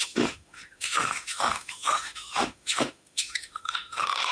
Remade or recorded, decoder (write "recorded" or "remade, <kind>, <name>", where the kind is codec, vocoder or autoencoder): remade, autoencoder, DAC-VAE